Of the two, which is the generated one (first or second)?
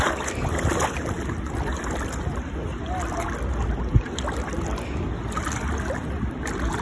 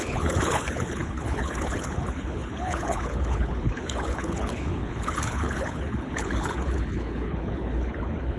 second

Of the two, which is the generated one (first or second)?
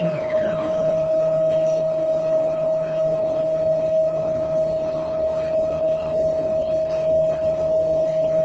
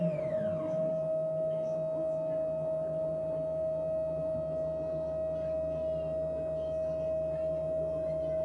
first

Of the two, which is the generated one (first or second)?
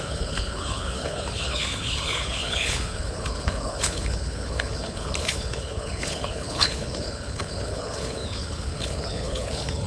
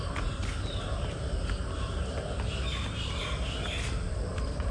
first